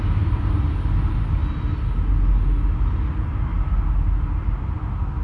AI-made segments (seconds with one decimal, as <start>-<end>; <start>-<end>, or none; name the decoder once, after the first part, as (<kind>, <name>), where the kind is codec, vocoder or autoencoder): none